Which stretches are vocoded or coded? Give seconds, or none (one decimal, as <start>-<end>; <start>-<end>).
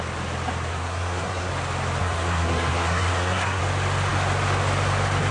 0.7-1.5; 2.0-3.6